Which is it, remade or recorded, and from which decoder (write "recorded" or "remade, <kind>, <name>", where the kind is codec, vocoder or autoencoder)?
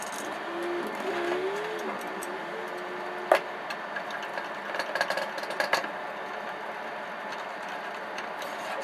recorded